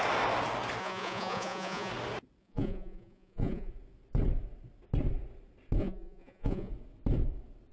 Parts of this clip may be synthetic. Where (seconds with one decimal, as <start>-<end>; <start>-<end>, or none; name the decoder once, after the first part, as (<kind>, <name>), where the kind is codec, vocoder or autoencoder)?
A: 0.8-1.9 (vocoder, Vocos); 2.4-3.7; 5.8-6.7